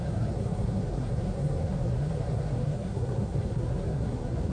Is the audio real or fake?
fake